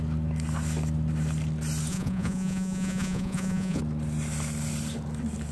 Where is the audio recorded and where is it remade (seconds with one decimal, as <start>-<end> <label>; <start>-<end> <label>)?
0.0-1.9 recorded; 1.9-3.8 remade; 3.8-5.5 recorded